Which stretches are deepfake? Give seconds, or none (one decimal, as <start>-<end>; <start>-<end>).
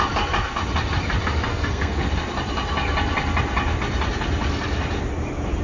1.5-2.1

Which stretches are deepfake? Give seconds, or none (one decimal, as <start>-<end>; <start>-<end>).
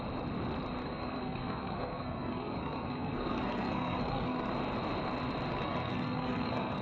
0.8-4.5; 5.5-6.8